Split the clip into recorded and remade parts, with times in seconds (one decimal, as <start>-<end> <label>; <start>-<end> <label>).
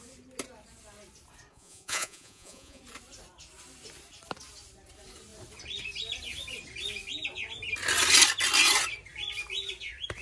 0.0-1.5 recorded; 1.5-2.8 remade; 2.8-10.2 recorded